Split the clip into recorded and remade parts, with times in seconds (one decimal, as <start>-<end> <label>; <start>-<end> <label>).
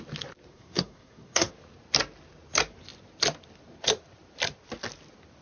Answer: 0.0-0.5 recorded; 0.5-1.5 remade; 1.5-5.4 recorded